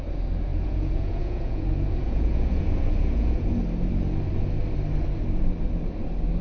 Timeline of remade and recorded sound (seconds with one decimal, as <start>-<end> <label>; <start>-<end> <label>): 0.0-0.5 recorded; 0.5-3.6 remade; 3.6-6.4 recorded